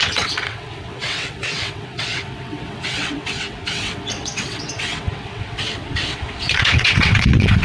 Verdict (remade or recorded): remade